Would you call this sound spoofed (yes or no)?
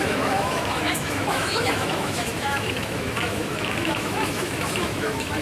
yes